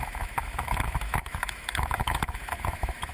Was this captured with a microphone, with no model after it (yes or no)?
no